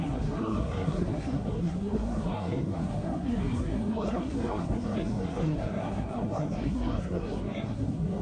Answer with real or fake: fake